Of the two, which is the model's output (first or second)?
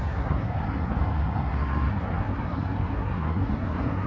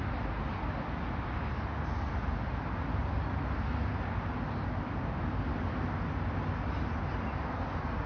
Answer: first